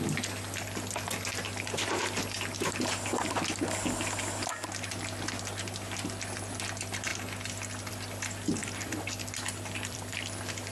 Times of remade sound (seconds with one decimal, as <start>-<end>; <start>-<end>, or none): 8.6-10.7